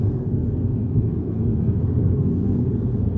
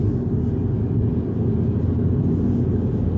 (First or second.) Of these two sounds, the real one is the second